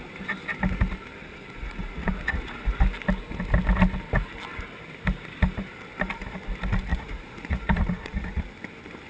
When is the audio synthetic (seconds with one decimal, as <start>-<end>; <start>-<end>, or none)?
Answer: 1.2-2.8; 6.9-8.4